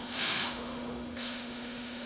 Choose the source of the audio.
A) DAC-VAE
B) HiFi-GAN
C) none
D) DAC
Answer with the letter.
A